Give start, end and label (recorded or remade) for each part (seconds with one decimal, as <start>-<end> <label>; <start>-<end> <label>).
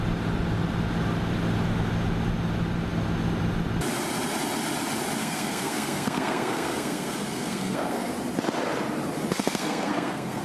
0.0-5.2 recorded; 5.2-8.1 remade; 8.1-9.4 recorded; 9.4-10.4 remade